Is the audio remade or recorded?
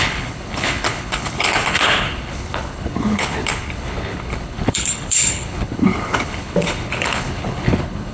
remade